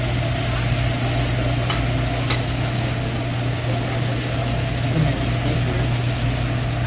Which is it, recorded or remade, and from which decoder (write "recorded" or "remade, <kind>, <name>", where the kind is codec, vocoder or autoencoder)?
recorded